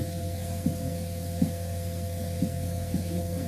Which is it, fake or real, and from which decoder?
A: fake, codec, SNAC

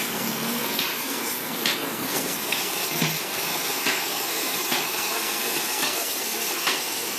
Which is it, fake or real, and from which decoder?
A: fake, codec, SNAC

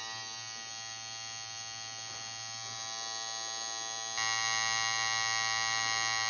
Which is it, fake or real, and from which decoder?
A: real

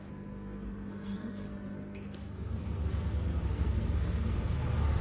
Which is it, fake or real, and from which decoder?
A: fake, codec, SNAC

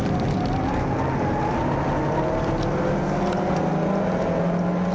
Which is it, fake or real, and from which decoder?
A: real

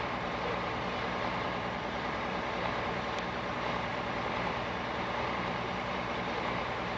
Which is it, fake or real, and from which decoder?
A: fake, vocoder, BigVGAN v2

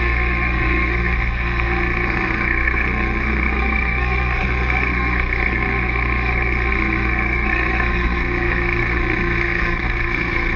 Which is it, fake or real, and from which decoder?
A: fake, codec, SNAC